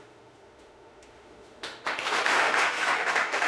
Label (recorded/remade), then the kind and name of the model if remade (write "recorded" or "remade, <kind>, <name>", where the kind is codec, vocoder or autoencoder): remade, autoencoder, DAC-VAE